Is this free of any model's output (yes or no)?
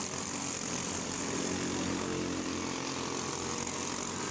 yes